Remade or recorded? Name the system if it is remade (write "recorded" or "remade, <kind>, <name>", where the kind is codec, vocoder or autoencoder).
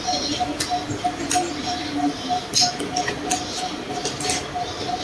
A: recorded